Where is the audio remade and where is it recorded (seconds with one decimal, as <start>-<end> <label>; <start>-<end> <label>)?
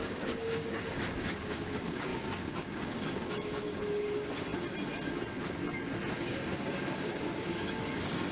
0.0-4.5 remade; 4.5-6.1 recorded; 6.1-8.3 remade